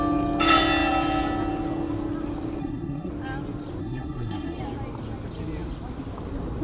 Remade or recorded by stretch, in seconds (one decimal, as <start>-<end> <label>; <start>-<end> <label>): 0.0-2.6 recorded; 2.6-3.1 remade; 3.1-3.8 recorded; 3.8-4.6 remade; 4.6-6.6 recorded